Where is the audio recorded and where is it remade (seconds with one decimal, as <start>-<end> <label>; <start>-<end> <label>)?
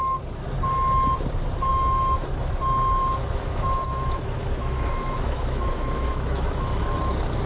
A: 0.0-1.7 recorded; 1.7-2.5 remade; 2.5-3.0 recorded; 3.0-7.0 remade; 7.0-7.5 recorded